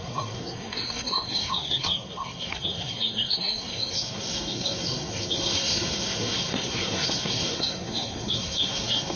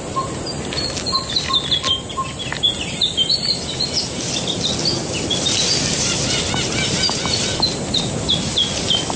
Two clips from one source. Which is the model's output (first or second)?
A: first